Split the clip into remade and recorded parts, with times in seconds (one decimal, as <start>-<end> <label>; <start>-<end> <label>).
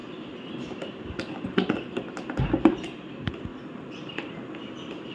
0.0-3.5 recorded; 3.5-4.3 remade; 4.3-5.1 recorded